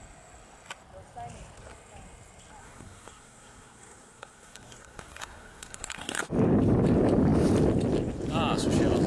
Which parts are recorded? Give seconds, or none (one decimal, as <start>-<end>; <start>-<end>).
0.0-2.6; 6.2-9.1